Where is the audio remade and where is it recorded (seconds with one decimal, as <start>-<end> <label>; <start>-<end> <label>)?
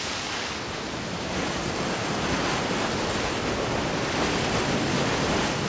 0.0-5.7 recorded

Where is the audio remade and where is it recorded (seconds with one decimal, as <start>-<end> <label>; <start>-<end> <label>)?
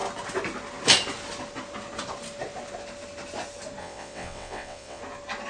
0.0-3.8 recorded; 3.8-5.0 remade; 5.0-5.5 recorded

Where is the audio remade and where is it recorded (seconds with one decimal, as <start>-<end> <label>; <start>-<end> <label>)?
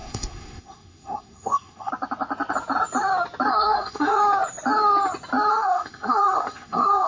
0.0-1.9 remade; 1.9-3.5 recorded; 3.5-4.2 remade; 4.2-5.5 recorded; 5.5-7.1 remade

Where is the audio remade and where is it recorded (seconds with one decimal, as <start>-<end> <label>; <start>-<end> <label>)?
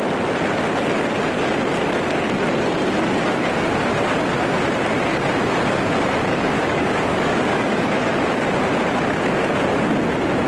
0.0-6.3 recorded; 6.3-8.2 remade; 8.2-10.5 recorded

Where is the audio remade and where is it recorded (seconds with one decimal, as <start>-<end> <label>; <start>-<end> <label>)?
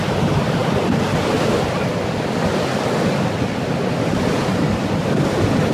0.0-5.7 recorded